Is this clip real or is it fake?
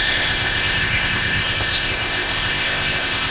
fake